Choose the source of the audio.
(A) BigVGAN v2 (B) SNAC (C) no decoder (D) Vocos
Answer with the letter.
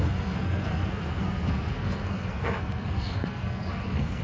B